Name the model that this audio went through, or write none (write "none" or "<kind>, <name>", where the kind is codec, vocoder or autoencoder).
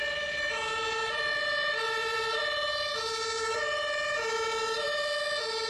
vocoder, BigVGAN v2